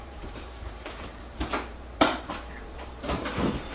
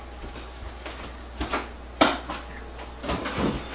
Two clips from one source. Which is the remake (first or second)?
first